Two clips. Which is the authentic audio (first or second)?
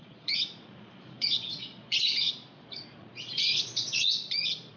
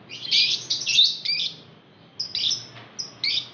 second